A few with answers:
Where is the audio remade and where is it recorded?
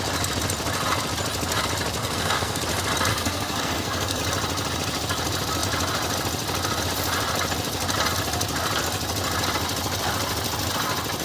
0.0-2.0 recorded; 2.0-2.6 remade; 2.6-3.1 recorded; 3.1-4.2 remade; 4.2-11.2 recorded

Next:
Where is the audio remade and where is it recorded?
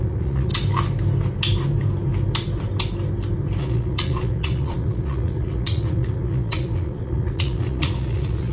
0.0-0.5 remade; 0.5-3.6 recorded; 3.6-8.5 remade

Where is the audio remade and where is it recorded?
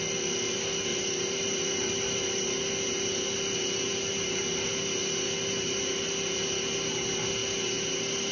0.0-8.3 recorded